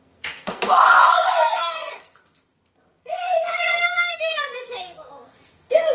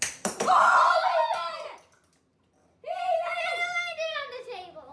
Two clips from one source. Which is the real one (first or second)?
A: second